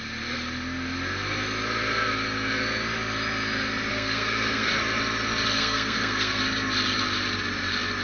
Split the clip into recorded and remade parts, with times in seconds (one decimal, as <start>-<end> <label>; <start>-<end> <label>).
0.0-3.9 recorded; 3.9-4.7 remade; 4.7-5.5 recorded; 5.5-6.4 remade; 6.4-8.0 recorded